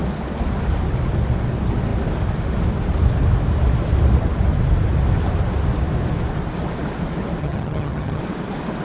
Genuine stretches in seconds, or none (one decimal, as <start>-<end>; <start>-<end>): 0.0-7.4; 8.2-8.8